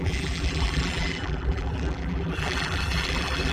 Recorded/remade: remade